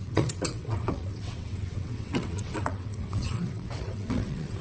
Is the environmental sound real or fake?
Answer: fake